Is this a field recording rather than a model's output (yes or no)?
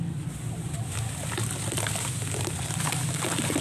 yes